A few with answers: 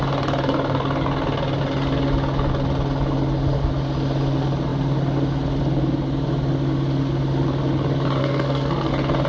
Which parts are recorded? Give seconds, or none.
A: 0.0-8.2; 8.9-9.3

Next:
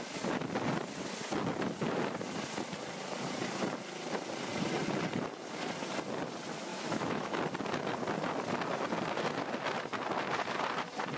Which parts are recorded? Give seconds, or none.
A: 0.0-6.7; 7.4-11.2

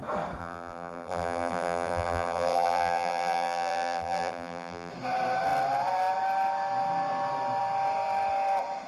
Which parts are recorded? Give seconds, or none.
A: 0.0-0.4; 4.9-8.9

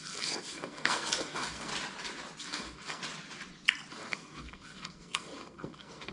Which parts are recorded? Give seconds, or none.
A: 1.7-2.4; 3.0-3.9

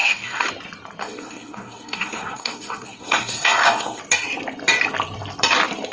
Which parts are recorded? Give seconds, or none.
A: 0.5-1.0; 4.0-5.9